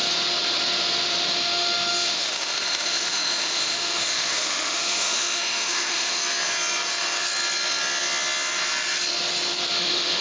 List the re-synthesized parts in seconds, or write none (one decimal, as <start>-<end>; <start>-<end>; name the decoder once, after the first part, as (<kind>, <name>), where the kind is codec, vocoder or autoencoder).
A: 1.3-6.2 (autoencoder, DAC-VAE); 9.7-10.2